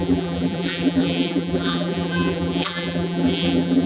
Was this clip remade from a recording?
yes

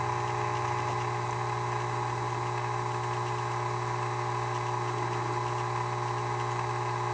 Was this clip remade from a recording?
no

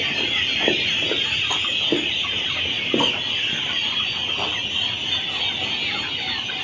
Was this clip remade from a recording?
no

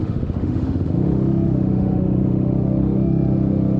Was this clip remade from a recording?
yes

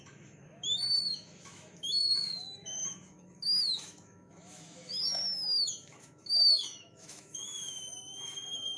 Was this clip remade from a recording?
yes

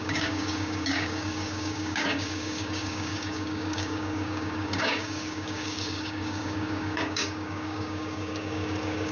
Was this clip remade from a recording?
yes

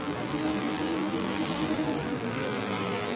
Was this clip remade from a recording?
yes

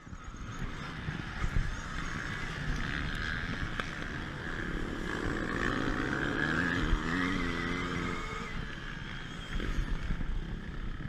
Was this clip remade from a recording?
no